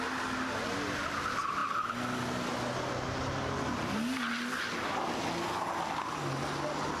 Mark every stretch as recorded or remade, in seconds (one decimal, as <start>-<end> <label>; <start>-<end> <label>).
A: 0.0-7.0 recorded

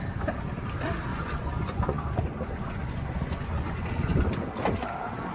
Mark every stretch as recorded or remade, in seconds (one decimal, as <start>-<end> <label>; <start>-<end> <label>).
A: 0.0-1.1 recorded; 1.1-4.3 remade; 4.3-5.3 recorded

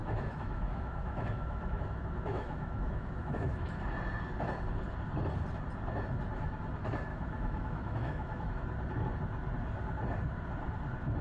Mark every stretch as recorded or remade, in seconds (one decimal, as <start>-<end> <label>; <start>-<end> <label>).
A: 0.0-3.8 remade; 3.8-7.1 recorded; 7.1-8.5 remade; 8.5-11.2 recorded